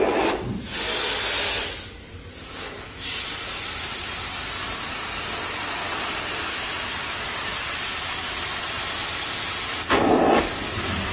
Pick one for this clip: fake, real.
real